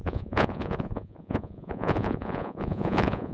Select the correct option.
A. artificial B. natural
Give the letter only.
A